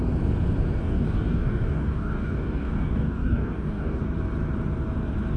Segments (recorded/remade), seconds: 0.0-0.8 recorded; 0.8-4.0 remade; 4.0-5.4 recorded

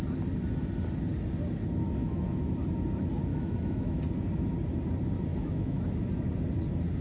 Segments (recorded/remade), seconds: 0.0-2.0 recorded; 2.0-2.5 remade; 2.5-3.3 recorded; 3.3-4.0 remade; 4.0-5.3 recorded; 5.3-5.8 remade; 5.8-7.0 recorded